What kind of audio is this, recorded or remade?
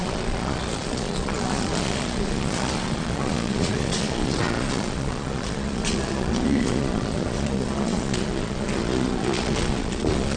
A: remade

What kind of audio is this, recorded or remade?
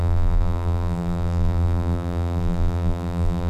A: remade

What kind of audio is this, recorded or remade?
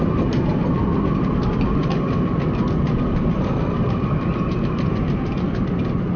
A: recorded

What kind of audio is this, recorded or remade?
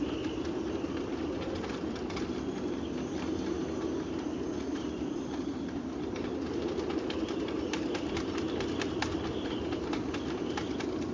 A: recorded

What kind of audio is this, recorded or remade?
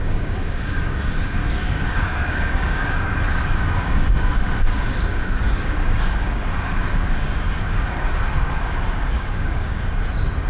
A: remade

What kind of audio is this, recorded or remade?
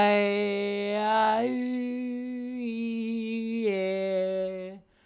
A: recorded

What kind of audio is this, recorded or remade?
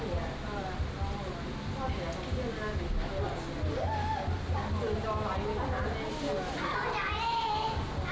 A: recorded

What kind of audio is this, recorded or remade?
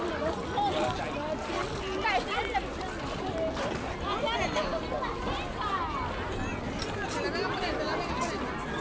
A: recorded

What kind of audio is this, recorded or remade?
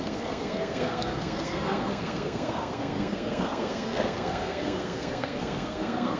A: remade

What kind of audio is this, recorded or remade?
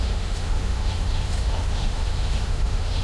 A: remade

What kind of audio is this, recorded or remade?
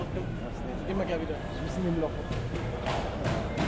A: recorded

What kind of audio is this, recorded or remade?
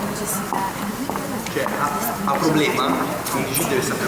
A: recorded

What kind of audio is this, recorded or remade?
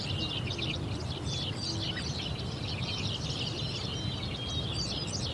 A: recorded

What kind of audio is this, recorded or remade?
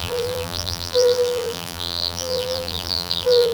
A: remade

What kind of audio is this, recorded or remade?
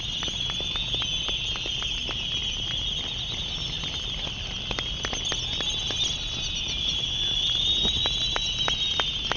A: recorded